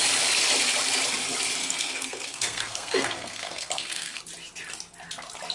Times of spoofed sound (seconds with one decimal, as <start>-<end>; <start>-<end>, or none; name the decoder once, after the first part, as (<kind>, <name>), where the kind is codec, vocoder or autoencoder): 1.6-4.2 (codec, SNAC)